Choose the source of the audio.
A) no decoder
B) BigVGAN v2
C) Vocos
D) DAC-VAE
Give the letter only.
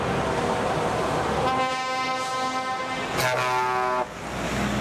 A